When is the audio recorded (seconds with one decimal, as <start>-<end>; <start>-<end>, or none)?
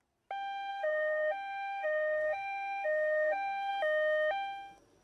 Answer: 0.0-0.7; 3.7-5.0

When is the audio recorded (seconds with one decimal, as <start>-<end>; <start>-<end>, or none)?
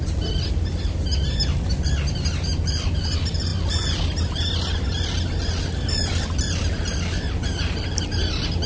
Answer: 0.0-8.7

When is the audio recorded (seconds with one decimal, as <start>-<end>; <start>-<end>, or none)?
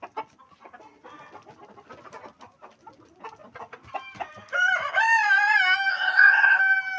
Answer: 0.0-5.9; 6.6-7.0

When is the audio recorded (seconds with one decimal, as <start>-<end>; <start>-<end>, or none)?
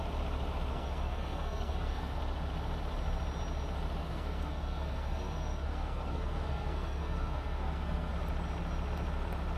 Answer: 0.0-0.7; 2.2-4.0; 8.1-9.6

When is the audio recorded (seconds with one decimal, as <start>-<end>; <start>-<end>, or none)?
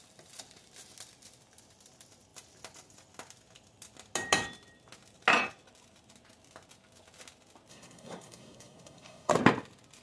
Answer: 0.0-7.7; 9.3-10.0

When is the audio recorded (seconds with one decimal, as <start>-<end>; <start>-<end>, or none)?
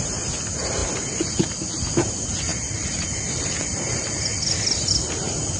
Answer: 0.0-5.6